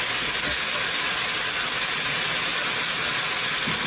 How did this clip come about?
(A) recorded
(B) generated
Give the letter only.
A